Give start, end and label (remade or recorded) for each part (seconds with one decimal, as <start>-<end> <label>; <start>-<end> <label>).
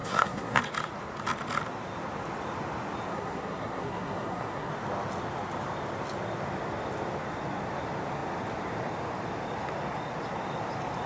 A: 0.0-0.6 remade; 0.6-3.1 recorded; 3.1-4.7 remade; 4.7-11.1 recorded